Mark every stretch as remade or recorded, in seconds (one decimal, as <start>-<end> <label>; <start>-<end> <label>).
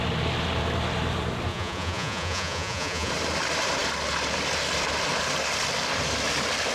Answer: 0.0-1.5 recorded; 1.5-3.1 remade; 3.1-6.7 recorded